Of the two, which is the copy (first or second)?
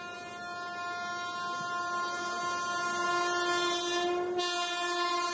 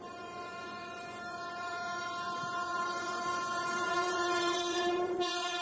second